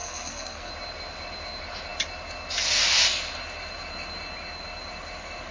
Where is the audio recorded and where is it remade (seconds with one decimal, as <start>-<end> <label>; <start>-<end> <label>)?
0.0-0.7 remade; 0.7-5.5 recorded